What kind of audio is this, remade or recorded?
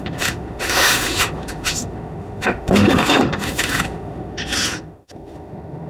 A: remade